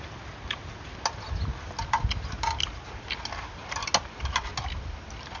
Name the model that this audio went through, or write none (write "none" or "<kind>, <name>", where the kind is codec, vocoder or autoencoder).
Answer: none